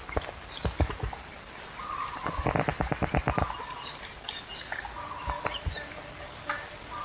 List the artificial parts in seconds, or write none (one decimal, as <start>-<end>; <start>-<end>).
none